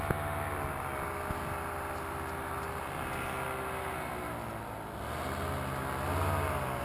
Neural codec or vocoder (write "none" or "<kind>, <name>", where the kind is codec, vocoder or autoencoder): none